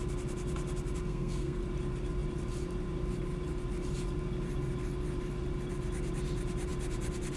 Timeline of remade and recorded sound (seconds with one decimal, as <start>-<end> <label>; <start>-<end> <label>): 0.0-1.1 recorded; 1.1-1.6 remade; 1.6-7.4 recorded